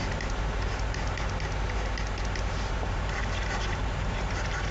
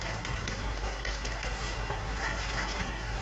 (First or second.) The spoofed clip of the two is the second